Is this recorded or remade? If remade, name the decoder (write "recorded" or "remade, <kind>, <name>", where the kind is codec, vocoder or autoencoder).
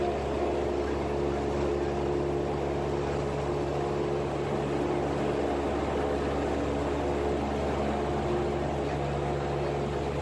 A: recorded